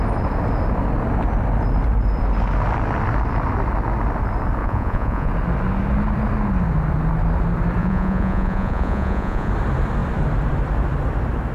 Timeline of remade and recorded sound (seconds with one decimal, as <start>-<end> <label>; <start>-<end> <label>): 0.0-4.6 recorded; 4.6-5.3 remade; 5.3-7.8 recorded; 7.8-9.5 remade; 9.5-11.5 recorded